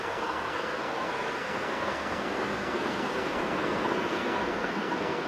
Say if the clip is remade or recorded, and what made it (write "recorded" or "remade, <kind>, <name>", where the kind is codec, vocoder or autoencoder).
remade, codec, SNAC